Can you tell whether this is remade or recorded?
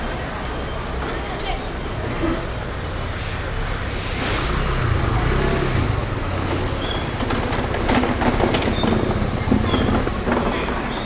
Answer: recorded